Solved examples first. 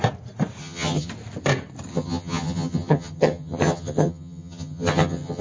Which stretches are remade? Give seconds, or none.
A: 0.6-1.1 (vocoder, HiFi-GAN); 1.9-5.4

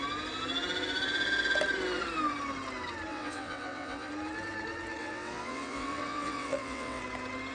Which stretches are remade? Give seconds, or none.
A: 3.1-4.1 (vocoder, WaveNeXt); 5.0-7.0